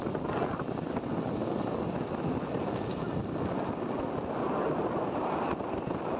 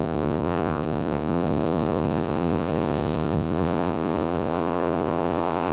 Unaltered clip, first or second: first